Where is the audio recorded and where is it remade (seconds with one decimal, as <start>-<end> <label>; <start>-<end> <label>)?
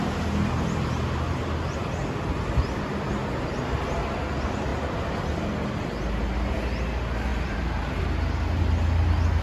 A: 0.0-4.7 recorded; 4.7-5.4 remade; 5.4-7.3 recorded; 7.3-8.0 remade; 8.0-9.4 recorded